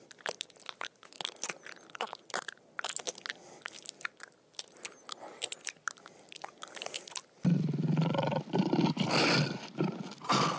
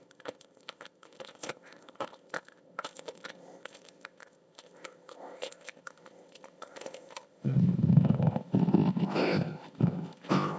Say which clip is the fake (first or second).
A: second